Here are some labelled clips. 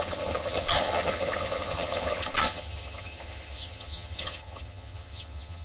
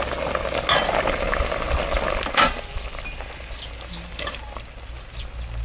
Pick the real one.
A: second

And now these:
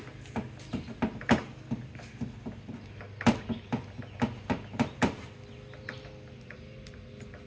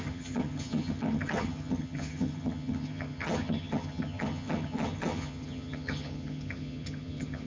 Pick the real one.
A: first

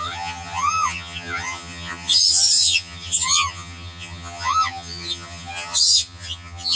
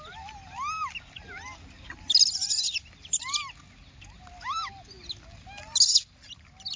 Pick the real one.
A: second